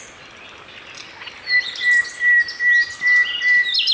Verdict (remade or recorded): recorded